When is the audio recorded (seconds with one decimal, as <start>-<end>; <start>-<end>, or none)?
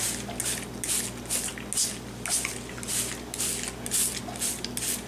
0.0-5.1